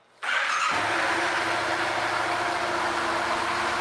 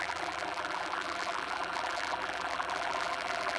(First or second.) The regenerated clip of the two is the second